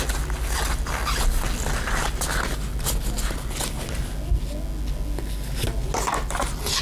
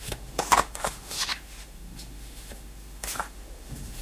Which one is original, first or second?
first